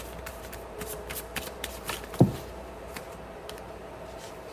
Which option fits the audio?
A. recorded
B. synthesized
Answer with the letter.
B